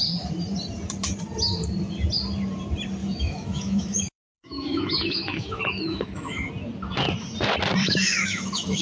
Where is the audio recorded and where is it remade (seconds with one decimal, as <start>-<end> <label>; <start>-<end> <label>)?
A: 0.0-3.0 recorded; 3.0-6.5 remade; 6.5-7.8 recorded; 7.8-8.8 remade